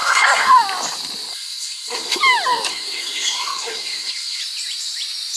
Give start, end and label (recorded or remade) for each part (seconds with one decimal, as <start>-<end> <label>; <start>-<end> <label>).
0.0-0.5 remade; 0.5-1.3 recorded; 1.3-2.2 remade; 2.2-2.7 recorded; 2.7-4.4 remade; 4.4-5.4 recorded